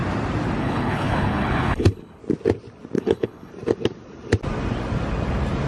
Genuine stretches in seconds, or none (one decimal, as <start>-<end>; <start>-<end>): 0.0-0.6; 2.2-3.0; 3.5-5.7